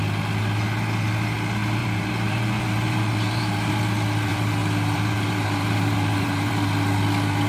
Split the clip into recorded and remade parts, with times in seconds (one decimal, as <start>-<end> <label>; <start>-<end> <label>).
0.0-1.8 recorded; 1.8-3.7 remade; 3.7-4.3 recorded; 4.3-6.5 remade; 6.5-7.5 recorded